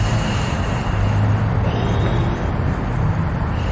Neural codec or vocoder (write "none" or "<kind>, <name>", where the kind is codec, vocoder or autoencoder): none